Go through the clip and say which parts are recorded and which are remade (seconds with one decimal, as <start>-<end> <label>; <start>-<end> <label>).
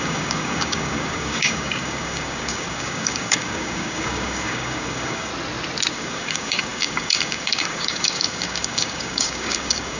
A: 0.0-5.3 remade; 5.3-5.9 recorded; 5.9-10.0 remade